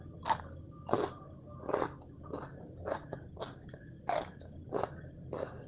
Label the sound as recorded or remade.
recorded